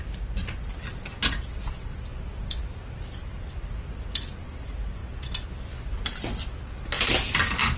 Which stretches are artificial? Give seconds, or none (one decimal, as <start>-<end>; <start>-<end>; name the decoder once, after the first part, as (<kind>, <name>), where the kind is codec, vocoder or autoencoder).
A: 0.0-5.0 (vocoder, BigVGAN v2); 5.5-7.8